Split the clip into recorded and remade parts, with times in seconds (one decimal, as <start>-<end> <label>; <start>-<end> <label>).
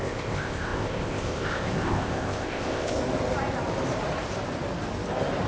0.0-3.0 remade; 3.0-5.5 recorded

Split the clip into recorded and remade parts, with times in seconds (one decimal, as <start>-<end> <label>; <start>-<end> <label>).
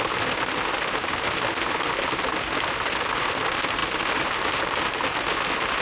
0.0-5.8 recorded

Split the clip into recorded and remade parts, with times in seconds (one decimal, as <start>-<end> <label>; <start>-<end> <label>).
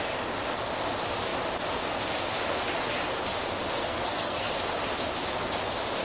0.0-3.8 recorded; 3.8-4.5 remade; 4.5-6.0 recorded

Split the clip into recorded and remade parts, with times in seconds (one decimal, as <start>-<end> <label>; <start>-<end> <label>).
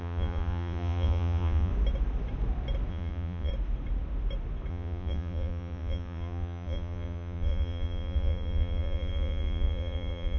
0.0-1.7 remade; 1.7-2.9 recorded; 2.9-3.5 remade; 3.5-4.7 recorded; 4.7-10.4 remade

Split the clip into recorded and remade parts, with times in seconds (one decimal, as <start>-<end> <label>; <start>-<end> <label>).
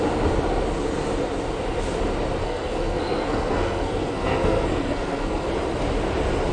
0.0-2.4 recorded; 2.4-5.5 remade; 5.5-6.5 recorded